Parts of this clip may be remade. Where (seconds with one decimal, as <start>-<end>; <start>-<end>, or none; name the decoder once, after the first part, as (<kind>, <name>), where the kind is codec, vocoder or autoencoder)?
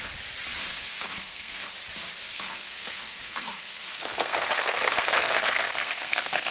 0.7-1.7 (codec, SNAC); 2.3-6.5